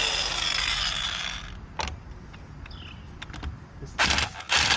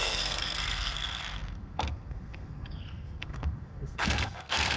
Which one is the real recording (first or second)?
first